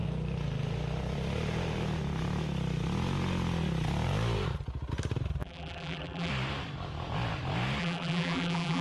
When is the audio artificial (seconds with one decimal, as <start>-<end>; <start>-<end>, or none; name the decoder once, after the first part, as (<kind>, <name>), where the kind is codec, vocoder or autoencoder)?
5.4-6.3 (vocoder, BigVGAN v2); 7.8-8.8